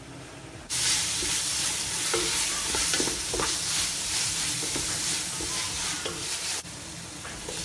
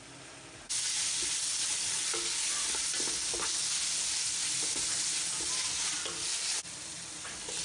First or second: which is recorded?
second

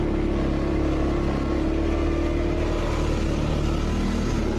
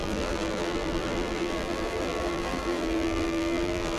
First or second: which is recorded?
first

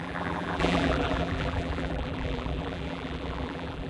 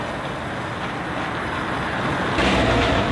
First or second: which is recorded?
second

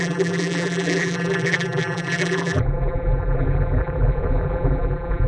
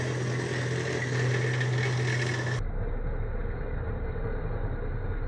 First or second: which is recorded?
second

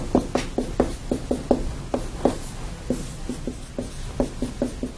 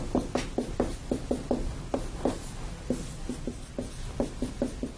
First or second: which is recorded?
first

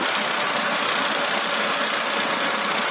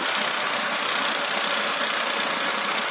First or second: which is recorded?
first